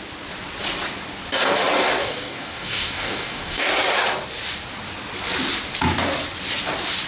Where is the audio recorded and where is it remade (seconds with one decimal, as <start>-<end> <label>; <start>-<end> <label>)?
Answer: 0.0-2.0 recorded; 2.0-3.7 remade; 3.7-7.1 recorded